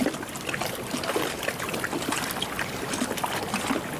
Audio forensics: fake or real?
real